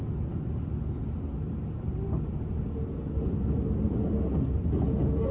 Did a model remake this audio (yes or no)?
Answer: no